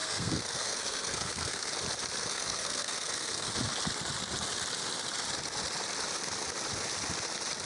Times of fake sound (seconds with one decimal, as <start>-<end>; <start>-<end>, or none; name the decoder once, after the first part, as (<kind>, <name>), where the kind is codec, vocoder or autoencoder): 0.0-1.7 (codec, SNAC); 2.2-3.5